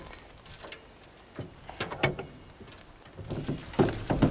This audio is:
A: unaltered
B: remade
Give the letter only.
A